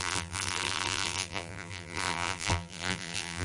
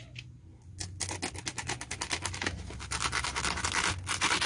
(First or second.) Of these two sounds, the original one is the second